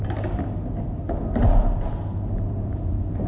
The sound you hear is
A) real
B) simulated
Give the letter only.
A